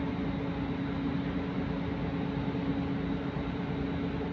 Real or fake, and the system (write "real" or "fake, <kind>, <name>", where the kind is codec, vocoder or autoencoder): real